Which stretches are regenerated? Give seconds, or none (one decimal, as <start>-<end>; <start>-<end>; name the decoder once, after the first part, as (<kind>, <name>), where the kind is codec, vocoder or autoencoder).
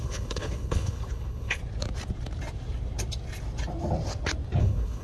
0.0-1.6 (codec, HILCodec); 4.6-5.0